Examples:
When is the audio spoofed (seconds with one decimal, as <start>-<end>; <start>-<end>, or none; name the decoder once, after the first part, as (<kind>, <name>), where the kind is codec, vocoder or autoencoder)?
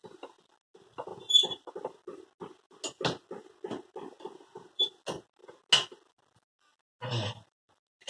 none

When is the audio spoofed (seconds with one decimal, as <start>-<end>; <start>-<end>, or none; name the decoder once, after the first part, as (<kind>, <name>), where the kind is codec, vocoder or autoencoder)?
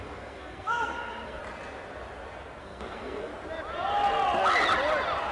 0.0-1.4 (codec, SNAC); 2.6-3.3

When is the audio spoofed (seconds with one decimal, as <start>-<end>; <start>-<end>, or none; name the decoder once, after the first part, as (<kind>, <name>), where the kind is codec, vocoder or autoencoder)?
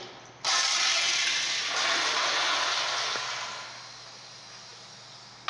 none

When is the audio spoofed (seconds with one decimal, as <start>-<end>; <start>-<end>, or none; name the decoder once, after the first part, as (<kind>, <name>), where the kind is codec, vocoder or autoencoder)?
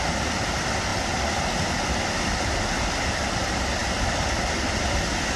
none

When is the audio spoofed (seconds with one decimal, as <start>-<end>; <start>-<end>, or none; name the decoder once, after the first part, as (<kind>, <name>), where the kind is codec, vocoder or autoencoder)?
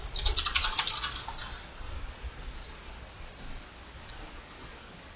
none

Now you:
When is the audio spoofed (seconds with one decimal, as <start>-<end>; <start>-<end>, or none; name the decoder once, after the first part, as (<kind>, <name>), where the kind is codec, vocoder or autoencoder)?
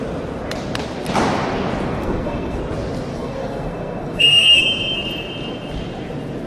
1.9-2.6 (codec, SNAC); 3.1-4.6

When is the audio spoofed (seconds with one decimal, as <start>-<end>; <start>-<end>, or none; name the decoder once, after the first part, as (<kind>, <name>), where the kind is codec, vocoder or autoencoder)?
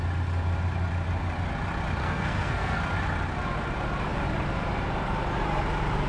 2.0-2.8 (codec, SNAC)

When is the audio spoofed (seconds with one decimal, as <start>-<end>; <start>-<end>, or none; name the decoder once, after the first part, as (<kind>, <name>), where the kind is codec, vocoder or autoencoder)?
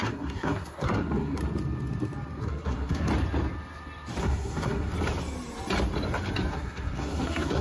0.0-1.4 (codec, SNAC); 2.4-3.1; 4.2-4.9; 6.5-7.6